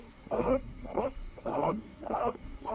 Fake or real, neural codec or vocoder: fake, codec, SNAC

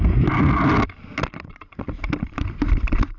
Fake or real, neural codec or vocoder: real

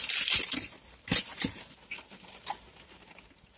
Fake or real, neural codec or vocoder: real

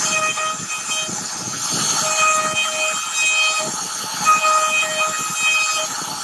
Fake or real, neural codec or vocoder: real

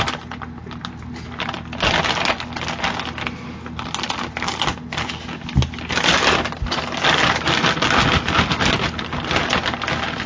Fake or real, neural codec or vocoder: real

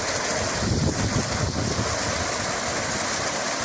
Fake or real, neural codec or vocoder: real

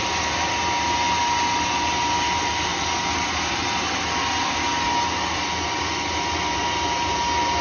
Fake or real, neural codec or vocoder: real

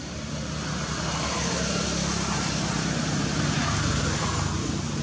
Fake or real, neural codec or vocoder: real